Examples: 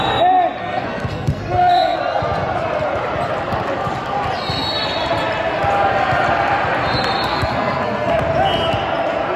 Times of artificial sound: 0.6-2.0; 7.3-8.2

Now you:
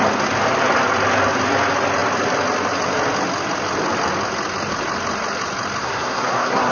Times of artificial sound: 5.8-6.7

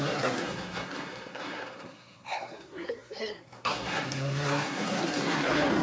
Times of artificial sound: 0.0-5.8

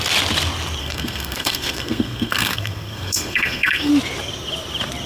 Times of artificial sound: 0.8-3.9

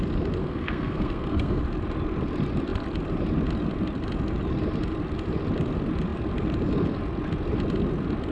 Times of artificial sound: 0.4-1.6

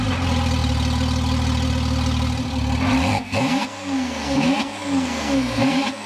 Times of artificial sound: 3.1-6.1

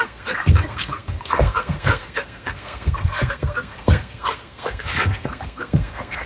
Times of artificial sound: 0.0-6.3

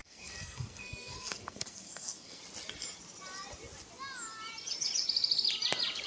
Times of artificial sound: 0.0-2.4